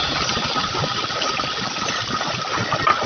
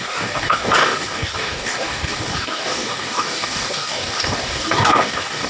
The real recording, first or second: first